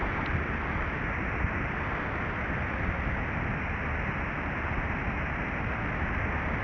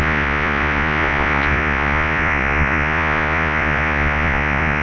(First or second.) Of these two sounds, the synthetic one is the second